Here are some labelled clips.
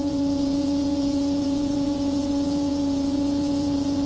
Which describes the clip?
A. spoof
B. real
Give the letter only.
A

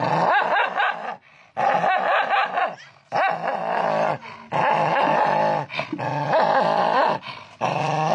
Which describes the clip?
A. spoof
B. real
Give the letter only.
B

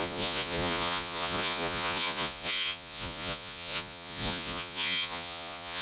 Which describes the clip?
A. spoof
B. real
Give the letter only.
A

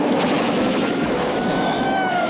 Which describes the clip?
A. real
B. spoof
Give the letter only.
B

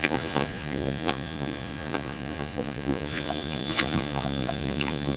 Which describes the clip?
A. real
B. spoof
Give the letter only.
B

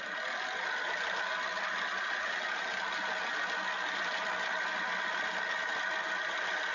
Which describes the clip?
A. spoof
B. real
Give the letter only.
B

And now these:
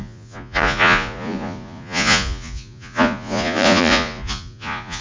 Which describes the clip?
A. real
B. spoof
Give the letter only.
B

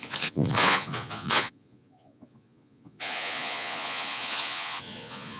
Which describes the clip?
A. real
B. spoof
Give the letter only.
B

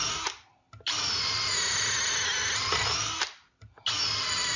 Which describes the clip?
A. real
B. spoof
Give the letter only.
A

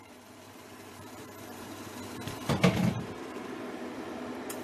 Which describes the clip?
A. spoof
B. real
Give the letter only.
A